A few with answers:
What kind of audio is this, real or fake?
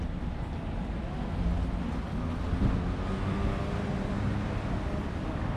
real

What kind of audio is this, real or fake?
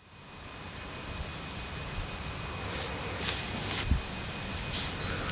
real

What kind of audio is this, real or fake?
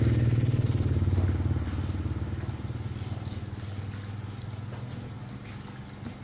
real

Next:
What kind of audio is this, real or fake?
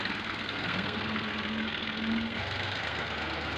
fake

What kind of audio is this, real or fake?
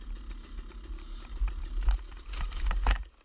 real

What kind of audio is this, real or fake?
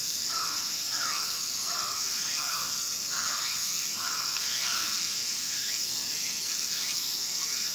fake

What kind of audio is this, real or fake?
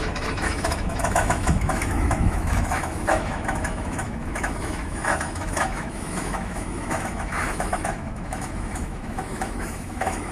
fake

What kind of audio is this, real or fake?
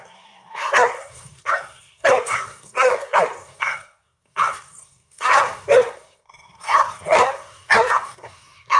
fake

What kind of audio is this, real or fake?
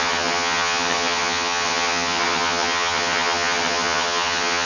fake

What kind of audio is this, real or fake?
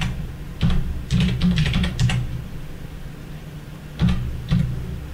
real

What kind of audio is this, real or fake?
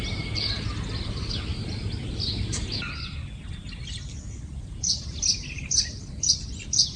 real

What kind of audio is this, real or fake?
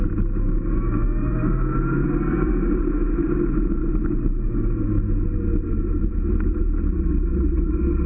real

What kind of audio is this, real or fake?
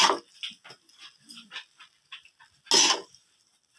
real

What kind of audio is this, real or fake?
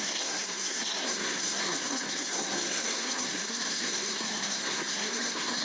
fake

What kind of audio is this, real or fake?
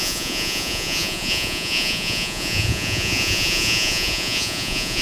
fake